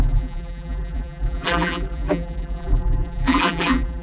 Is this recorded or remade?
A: remade